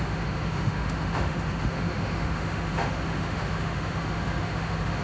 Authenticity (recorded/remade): remade